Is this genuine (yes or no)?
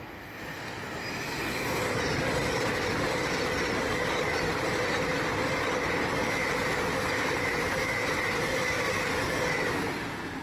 yes